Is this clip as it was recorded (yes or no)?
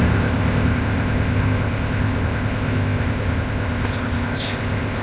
no